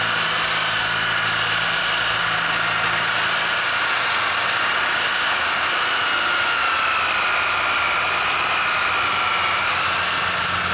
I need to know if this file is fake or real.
real